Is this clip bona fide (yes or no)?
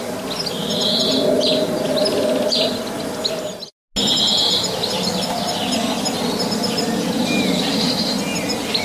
yes